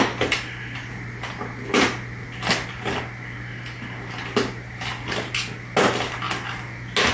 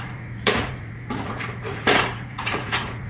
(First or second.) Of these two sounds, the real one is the first